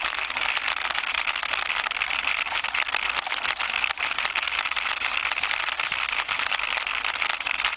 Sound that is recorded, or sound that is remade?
recorded